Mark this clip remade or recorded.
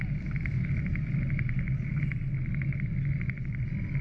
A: recorded